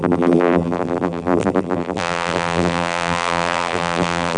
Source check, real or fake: fake